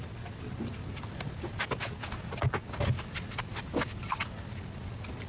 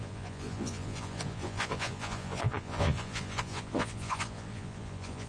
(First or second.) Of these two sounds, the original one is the first